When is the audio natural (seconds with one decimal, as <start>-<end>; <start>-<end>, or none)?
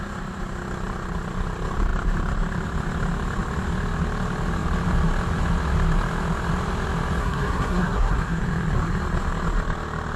0.0-7.2; 8.4-10.2